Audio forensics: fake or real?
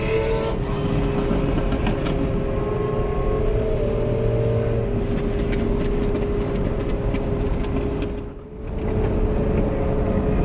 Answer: real